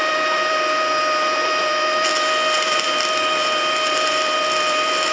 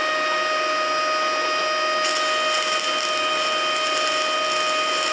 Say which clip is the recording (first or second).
second